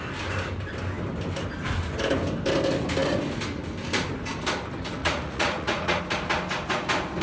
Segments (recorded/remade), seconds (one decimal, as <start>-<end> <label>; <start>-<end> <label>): 0.0-5.0 recorded; 5.0-6.0 remade; 6.0-7.2 recorded